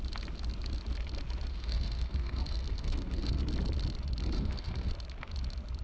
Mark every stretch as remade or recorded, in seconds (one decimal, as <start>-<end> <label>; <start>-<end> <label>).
0.0-1.5 recorded; 1.5-3.4 remade; 3.4-4.2 recorded; 4.2-4.9 remade; 4.9-5.8 recorded